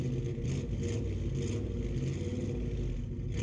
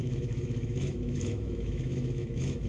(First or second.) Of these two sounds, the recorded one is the first